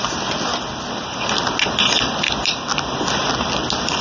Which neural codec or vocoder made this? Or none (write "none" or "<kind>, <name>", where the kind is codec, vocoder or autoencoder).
none